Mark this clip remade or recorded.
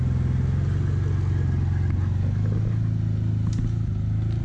recorded